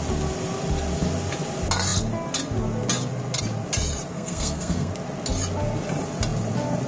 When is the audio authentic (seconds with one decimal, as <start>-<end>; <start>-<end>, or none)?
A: 0.0-4.1; 4.9-6.9

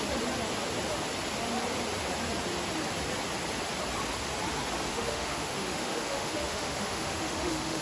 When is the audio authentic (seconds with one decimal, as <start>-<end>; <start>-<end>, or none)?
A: 0.0-4.9

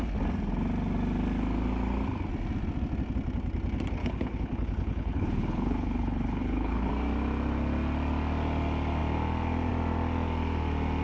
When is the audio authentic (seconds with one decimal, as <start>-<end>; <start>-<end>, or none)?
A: 0.0-4.0; 6.9-11.0

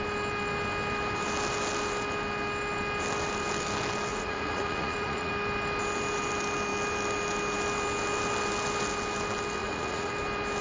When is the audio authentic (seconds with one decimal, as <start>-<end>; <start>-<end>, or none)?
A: 0.0-4.1; 5.3-9.6; 10.1-10.6